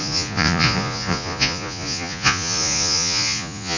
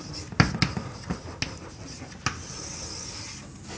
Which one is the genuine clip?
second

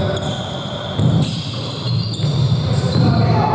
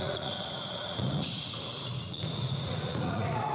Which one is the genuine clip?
first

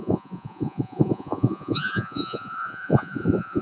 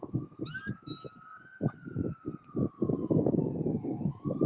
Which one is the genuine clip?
second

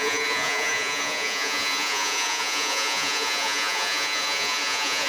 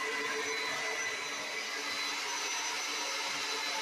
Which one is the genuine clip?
second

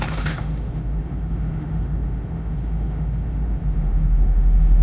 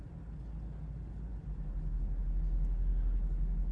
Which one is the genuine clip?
second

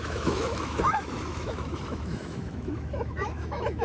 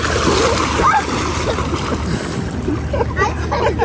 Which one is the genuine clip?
second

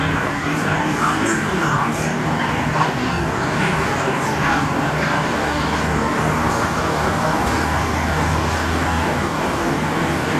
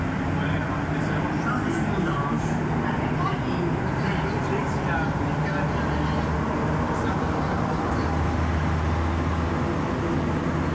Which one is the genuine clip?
second